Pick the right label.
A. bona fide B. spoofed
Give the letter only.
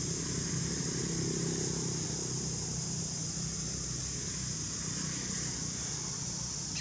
A